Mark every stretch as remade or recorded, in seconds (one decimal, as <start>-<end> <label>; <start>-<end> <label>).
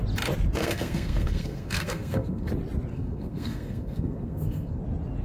0.0-0.6 recorded; 0.6-2.5 remade; 2.5-2.9 recorded; 2.9-4.8 remade; 4.8-5.2 recorded